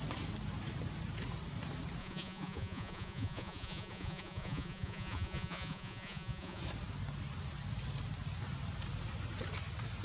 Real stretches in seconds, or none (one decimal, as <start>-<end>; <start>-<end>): 0.0-2.0; 6.6-10.0

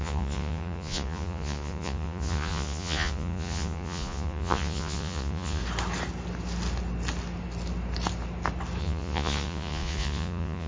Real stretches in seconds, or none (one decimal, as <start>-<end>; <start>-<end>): 5.6-8.8

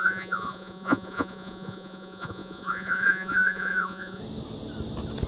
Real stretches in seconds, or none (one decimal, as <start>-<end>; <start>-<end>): 4.2-5.3

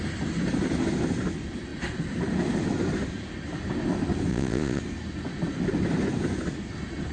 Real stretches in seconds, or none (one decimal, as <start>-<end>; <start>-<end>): 0.0-4.3; 4.8-7.1

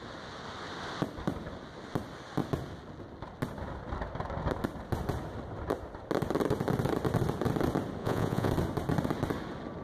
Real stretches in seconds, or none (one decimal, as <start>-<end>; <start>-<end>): 0.0-8.0; 8.5-9.8

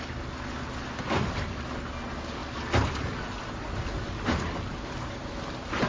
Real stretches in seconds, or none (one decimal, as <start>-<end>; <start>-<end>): 0.0-5.9

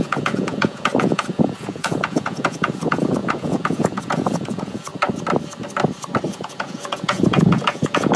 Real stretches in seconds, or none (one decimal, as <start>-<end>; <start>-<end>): 4.9-6.3